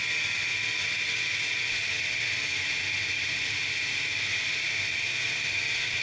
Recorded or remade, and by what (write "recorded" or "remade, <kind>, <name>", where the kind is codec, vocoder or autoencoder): recorded